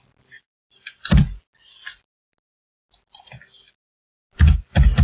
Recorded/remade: recorded